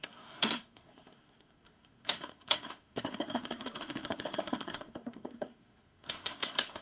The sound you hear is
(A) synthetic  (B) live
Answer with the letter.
A